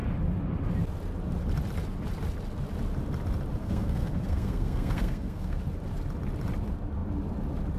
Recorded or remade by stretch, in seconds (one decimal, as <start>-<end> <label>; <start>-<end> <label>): 0.0-3.6 recorded; 3.6-5.6 remade; 5.6-7.8 recorded